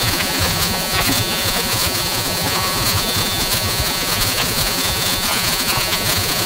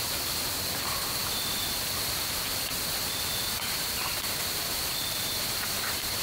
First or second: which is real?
second